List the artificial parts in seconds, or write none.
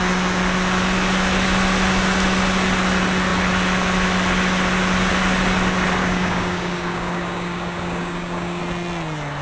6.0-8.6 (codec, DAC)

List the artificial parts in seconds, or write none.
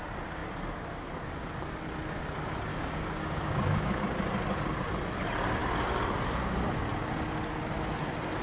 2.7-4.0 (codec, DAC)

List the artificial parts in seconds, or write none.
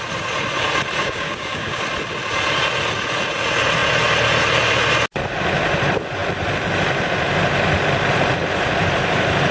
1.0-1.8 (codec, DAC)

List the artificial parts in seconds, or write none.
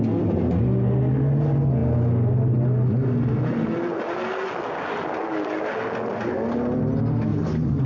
7.3-7.9 (codec, DAC)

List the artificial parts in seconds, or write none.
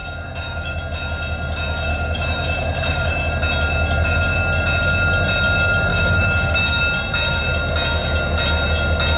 0.0-0.8 (codec, DAC); 1.9-3.3; 5.9-6.8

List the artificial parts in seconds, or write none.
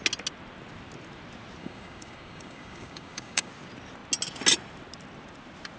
1.6-3.5 (codec, DAC)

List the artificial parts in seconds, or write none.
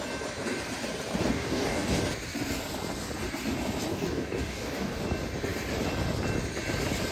1.3-2.0 (codec, DAC); 3.9-5.0